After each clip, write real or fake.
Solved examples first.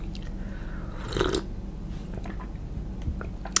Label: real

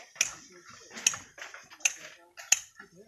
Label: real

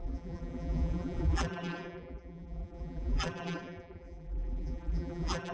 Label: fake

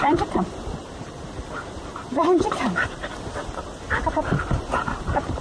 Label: fake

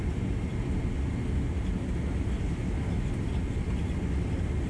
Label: real